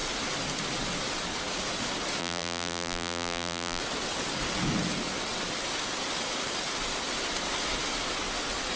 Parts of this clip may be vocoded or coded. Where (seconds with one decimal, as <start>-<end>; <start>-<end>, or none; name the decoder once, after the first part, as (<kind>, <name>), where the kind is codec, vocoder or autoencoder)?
2.2-3.8 (vocoder, BigVGAN v2)